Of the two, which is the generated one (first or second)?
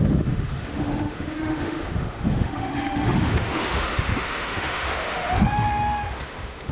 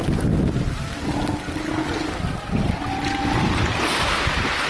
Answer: first